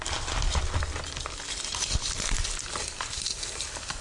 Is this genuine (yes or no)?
yes